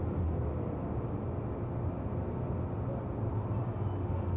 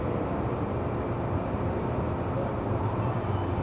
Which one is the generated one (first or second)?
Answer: second